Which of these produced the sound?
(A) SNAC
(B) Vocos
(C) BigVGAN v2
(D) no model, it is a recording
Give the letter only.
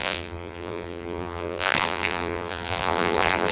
C